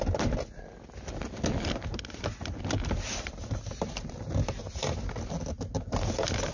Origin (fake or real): real